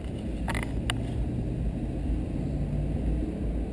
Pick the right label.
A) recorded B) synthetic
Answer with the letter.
A